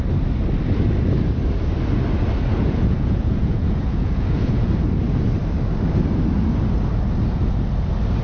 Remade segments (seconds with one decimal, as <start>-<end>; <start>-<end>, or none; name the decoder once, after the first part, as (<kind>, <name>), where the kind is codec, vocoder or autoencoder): 2.5-4.7 (vocoder, Vocos)